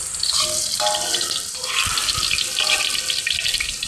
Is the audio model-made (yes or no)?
no